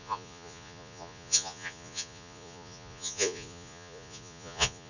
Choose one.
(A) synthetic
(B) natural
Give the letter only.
A